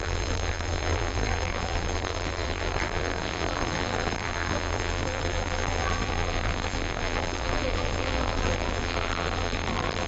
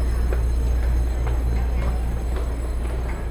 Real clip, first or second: second